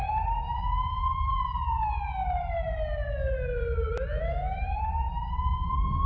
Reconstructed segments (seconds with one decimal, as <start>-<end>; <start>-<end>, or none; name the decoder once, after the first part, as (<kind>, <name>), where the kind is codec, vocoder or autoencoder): 4.1-4.8 (autoencoder, DAC-VAE)